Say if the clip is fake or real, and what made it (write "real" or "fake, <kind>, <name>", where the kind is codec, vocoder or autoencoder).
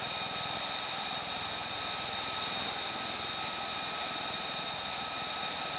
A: real